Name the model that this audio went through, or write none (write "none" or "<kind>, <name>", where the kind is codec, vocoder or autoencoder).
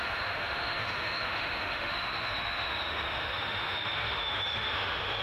autoencoder, DAC-VAE